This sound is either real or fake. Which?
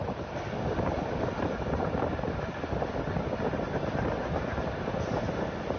real